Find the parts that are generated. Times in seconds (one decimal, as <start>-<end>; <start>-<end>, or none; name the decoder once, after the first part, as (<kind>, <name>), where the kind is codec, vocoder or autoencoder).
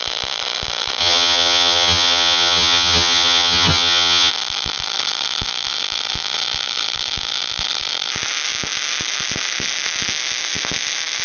1.0-4.3 (vocoder, HiFi-GAN)